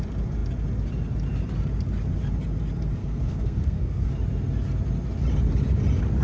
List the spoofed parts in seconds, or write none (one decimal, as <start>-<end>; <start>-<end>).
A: 3.0-4.1